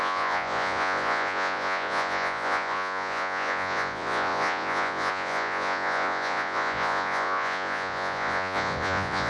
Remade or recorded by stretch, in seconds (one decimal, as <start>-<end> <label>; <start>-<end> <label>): 0.0-9.3 remade